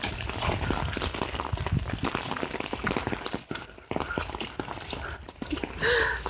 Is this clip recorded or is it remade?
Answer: recorded